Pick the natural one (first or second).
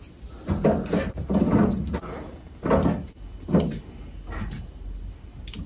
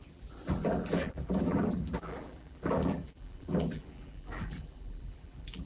first